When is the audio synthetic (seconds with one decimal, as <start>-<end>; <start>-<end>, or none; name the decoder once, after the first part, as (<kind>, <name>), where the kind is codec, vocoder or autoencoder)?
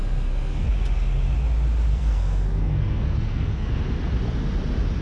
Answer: 0.0-0.7 (codec, SNAC); 1.9-3.7